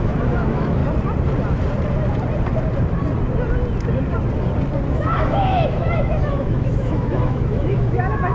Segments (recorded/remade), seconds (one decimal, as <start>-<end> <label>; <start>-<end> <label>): 0.0-0.8 remade; 0.8-4.9 recorded; 4.9-8.3 remade